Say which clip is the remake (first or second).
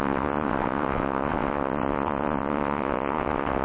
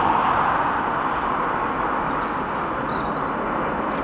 first